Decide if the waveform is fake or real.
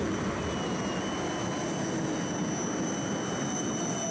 real